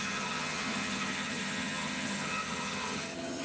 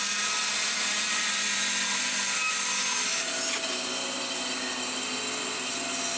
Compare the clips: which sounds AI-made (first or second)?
first